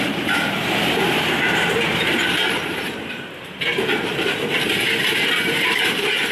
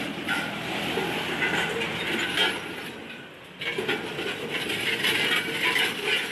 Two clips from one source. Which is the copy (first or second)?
first